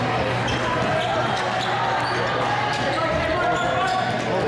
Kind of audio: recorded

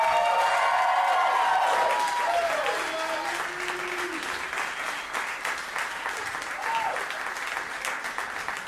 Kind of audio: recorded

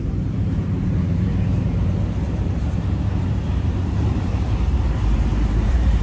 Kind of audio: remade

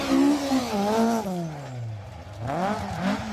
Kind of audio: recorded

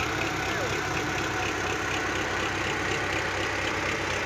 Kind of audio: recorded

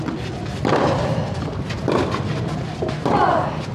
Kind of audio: recorded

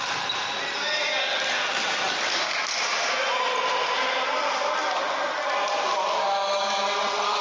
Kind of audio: recorded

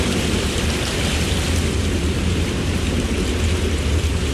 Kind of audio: remade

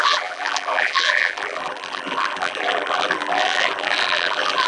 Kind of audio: remade